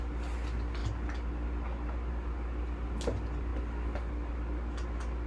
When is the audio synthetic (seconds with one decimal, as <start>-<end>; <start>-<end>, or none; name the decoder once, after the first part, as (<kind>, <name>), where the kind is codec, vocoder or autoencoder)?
none